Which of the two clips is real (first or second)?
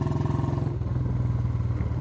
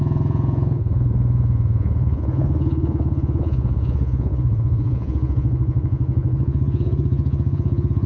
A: first